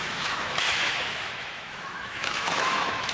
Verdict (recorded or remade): remade